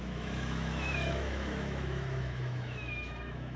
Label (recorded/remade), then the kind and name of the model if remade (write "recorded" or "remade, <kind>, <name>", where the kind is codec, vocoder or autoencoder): remade, autoencoder, DAC-VAE